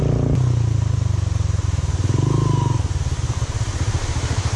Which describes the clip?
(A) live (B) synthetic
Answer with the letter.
A